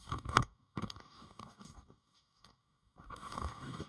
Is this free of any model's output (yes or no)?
no